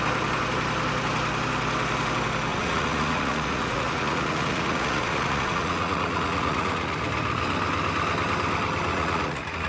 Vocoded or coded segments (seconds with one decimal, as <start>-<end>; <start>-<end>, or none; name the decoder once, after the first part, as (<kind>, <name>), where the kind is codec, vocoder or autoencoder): 2.5-7.0 (vocoder, Vocos); 8.9-9.7